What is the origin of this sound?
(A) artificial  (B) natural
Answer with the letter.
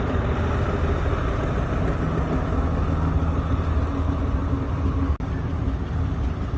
B